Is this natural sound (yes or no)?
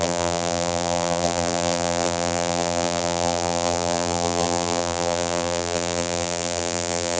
no